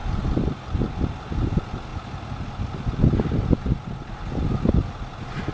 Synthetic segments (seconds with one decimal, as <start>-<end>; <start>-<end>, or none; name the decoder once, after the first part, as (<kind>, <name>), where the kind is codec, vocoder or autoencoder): none